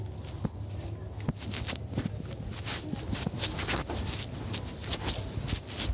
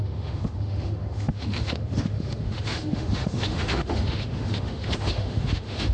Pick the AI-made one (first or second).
second